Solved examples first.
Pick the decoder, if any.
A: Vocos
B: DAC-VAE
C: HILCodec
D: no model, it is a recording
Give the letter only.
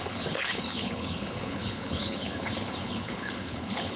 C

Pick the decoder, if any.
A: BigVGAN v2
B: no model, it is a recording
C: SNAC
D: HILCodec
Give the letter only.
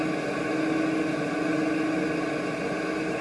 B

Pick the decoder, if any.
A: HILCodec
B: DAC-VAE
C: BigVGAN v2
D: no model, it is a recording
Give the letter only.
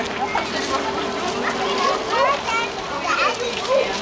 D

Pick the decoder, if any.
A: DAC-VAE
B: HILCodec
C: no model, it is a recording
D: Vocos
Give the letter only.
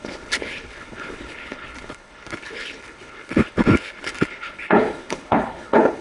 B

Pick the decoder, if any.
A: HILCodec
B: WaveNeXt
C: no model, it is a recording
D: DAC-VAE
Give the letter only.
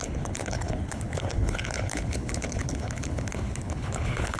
A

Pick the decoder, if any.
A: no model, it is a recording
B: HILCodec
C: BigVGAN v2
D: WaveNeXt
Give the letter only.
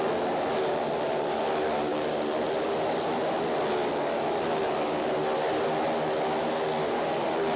A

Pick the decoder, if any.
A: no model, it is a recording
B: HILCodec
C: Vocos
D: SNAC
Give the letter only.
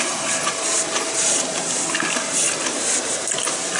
A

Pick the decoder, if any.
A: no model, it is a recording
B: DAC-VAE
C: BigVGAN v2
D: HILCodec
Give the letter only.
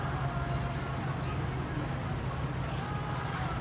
A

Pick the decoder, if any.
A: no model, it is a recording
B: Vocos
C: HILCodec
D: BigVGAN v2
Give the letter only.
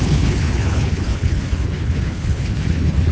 C